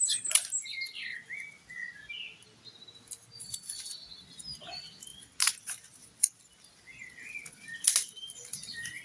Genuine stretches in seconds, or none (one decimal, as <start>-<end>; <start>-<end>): 0.0-9.0